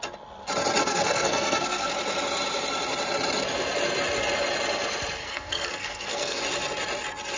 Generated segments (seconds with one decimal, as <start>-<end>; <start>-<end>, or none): 0.8-1.9; 5.2-6.4